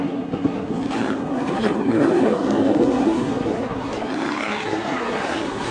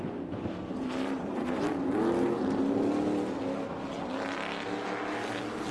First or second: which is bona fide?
second